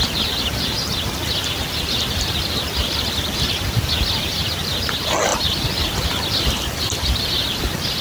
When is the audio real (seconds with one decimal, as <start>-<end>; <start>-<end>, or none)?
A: 0.0-5.3; 7.6-8.0